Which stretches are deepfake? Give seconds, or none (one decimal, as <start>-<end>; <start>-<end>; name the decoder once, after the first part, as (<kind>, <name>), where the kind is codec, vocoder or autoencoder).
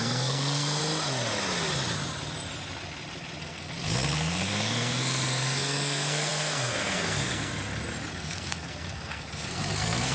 0.0-0.8 (codec, SNAC); 3.4-7.5; 8.1-10.1